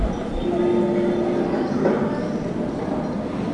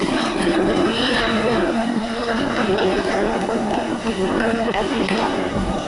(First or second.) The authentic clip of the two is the first